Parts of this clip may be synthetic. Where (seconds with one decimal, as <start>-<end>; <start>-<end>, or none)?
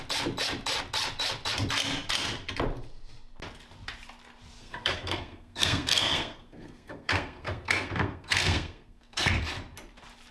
4.6-9.4